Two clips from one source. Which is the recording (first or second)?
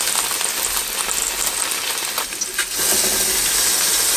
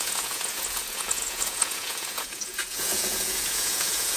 first